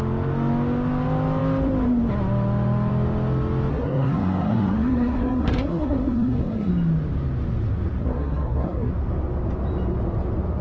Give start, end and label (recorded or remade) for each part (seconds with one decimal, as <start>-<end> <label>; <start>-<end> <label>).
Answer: 0.0-3.7 recorded; 3.7-6.7 remade; 6.7-8.0 recorded; 8.0-8.9 remade; 8.9-10.6 recorded